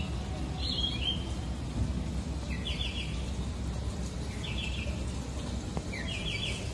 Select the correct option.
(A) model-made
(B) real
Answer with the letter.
B